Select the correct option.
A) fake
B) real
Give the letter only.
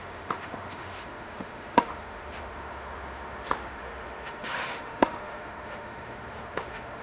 A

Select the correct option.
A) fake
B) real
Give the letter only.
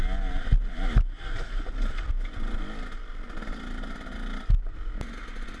B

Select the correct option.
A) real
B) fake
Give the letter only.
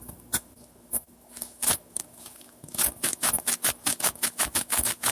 B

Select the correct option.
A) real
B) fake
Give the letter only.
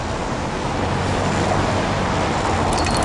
A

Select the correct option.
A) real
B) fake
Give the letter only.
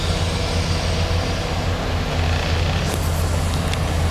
A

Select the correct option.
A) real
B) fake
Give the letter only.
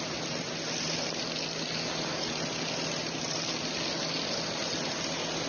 A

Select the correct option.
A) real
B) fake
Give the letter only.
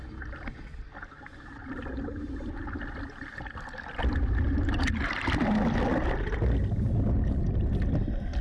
A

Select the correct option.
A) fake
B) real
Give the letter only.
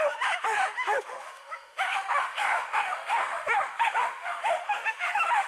A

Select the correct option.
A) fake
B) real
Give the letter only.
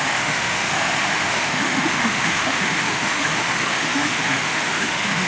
A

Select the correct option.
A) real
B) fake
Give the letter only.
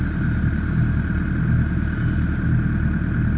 A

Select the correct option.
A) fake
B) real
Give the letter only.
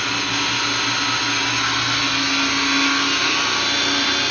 B